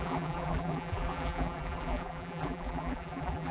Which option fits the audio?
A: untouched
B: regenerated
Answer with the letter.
B